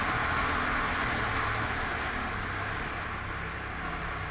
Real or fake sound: real